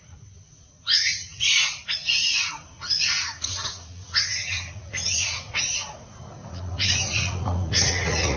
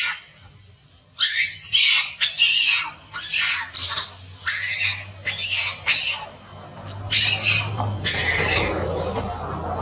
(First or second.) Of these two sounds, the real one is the second